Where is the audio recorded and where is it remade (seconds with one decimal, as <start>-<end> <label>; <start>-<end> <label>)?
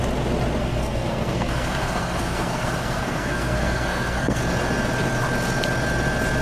0.0-0.6 recorded; 0.6-4.4 remade; 4.4-6.4 recorded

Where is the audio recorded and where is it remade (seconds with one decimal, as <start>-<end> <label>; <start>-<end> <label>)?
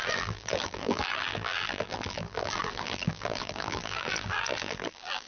0.0-5.3 remade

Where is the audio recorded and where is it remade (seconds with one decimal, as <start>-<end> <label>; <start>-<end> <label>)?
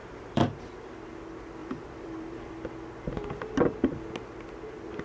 0.0-0.6 remade; 0.6-1.6 recorded; 1.6-2.5 remade; 2.5-5.0 recorded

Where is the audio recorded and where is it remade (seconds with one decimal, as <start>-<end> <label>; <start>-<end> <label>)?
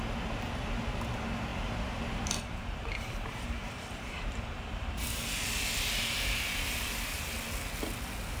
0.0-1.5 recorded; 1.5-5.2 remade; 5.2-8.4 recorded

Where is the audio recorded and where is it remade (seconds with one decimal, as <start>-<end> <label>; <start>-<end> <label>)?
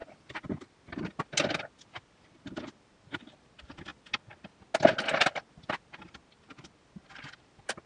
0.0-7.9 recorded